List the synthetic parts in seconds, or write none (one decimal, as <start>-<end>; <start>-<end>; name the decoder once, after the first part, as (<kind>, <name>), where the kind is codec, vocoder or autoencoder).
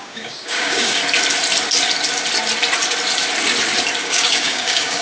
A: 0.0-1.0 (codec, DAC); 4.0-5.0